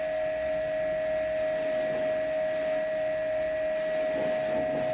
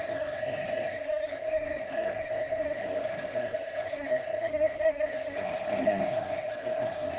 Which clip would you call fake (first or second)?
second